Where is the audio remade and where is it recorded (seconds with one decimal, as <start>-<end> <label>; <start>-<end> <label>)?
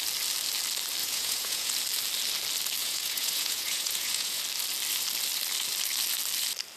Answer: 0.0-1.0 recorded; 1.0-1.7 remade; 1.7-2.8 recorded; 2.8-4.4 remade; 4.4-6.8 recorded